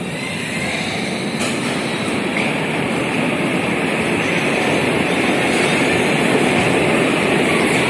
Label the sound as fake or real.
fake